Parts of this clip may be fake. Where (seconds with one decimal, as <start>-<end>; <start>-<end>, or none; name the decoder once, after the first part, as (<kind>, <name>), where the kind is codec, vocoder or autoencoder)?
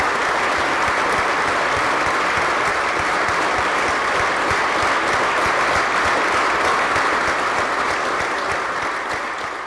2.7-3.2 (vocoder, BigVGAN v2)